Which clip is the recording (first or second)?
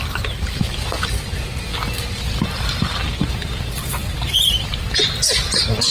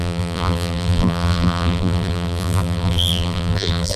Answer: first